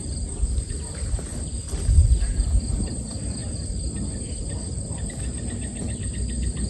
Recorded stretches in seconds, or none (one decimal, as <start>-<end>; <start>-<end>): 0.0-6.7